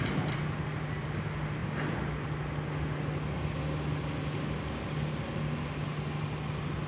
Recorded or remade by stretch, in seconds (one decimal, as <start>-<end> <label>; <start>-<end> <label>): 0.0-6.9 recorded